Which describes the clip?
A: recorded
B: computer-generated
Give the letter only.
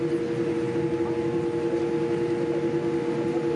A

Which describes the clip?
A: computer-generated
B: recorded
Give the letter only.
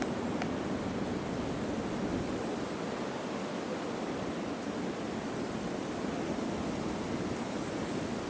B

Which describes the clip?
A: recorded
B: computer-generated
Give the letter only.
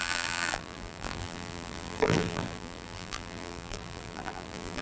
B